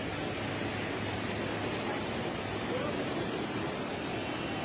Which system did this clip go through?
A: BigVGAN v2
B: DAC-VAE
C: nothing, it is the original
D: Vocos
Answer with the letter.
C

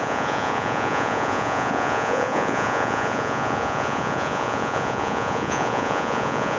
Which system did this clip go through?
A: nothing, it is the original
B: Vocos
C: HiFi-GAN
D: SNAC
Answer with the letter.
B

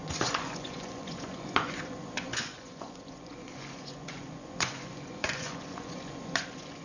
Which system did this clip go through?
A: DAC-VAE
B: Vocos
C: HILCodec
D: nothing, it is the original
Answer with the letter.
B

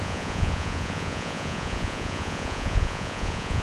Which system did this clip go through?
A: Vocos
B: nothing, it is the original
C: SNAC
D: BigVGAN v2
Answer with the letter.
A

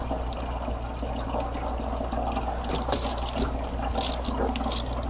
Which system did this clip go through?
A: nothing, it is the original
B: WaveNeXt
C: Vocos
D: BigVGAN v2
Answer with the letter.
A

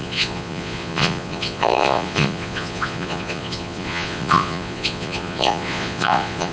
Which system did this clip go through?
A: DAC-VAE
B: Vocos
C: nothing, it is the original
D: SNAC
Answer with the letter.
B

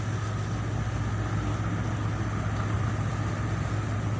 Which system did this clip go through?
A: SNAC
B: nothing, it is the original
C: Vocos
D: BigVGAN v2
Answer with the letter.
B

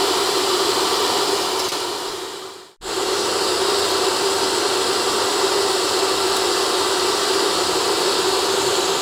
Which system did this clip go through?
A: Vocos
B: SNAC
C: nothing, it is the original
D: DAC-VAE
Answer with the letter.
C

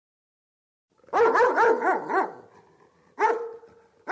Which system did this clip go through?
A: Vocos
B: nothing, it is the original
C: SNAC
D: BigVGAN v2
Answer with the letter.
B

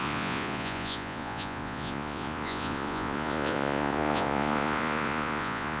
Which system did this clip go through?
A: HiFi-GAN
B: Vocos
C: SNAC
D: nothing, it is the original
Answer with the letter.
B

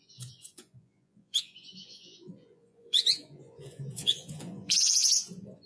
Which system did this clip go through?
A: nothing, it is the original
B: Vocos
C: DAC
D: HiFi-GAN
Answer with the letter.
B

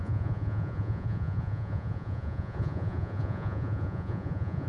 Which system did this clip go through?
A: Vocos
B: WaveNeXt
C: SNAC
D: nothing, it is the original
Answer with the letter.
A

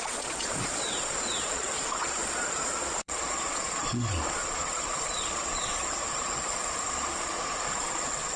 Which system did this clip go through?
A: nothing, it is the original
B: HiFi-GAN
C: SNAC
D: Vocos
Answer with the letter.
D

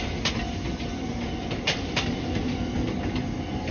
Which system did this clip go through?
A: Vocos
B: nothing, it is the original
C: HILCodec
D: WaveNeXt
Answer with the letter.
B